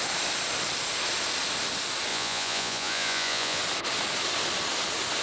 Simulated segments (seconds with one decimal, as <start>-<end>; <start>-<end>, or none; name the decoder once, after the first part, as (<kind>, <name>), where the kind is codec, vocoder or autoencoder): 2.1-3.6 (vocoder, Vocos)